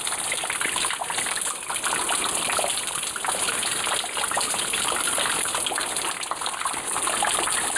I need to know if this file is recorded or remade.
recorded